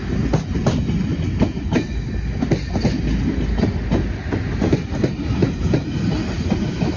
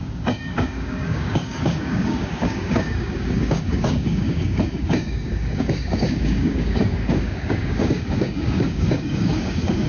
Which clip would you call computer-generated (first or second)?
second